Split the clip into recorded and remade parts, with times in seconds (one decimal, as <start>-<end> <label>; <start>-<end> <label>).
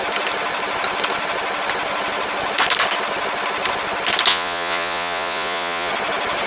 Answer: 0.0-4.3 recorded; 4.3-5.9 remade; 5.9-6.5 recorded